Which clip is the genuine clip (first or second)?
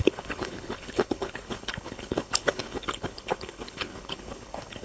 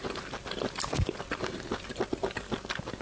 second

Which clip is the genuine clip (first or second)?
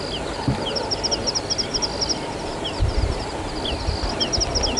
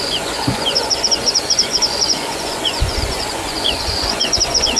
first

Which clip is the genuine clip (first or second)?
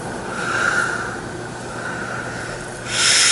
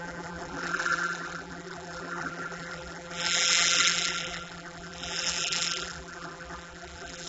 first